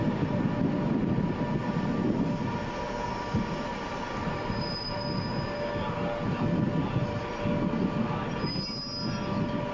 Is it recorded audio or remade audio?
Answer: recorded